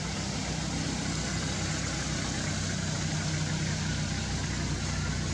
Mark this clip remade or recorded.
recorded